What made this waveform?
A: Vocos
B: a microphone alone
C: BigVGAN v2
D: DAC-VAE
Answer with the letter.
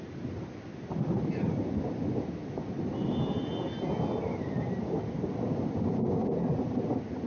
B